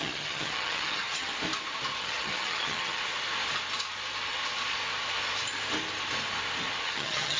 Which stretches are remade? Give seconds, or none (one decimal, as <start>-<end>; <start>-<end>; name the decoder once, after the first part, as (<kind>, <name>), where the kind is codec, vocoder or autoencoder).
0.0-1.3 (vocoder, HiFi-GAN); 2.0-3.0; 6.8-7.4